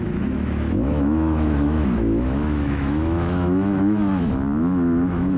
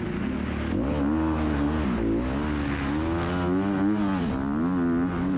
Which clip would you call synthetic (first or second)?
first